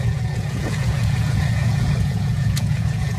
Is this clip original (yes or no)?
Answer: no